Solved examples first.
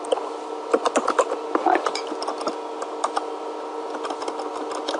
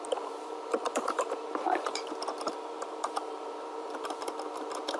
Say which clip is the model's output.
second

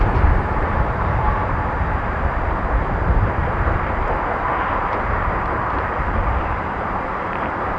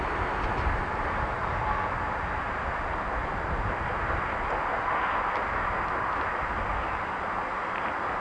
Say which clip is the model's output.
first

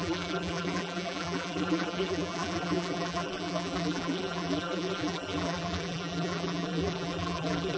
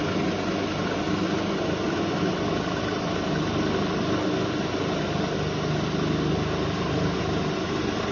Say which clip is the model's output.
first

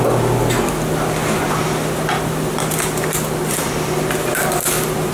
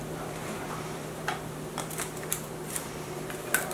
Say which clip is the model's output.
second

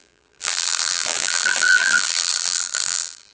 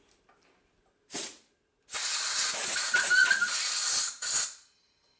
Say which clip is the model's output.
first